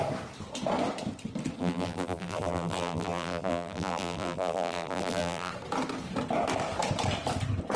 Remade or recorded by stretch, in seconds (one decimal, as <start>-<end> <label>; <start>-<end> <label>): 0.0-1.6 recorded; 1.6-5.5 remade; 5.5-7.8 recorded